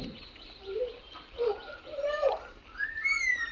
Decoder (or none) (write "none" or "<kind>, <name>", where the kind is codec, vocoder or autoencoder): none